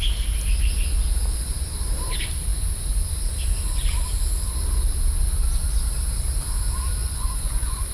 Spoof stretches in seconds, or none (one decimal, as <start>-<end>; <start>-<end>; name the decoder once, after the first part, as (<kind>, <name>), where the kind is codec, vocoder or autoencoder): 7.0-7.9 (vocoder, Vocos)